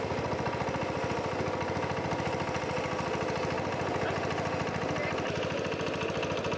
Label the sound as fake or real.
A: real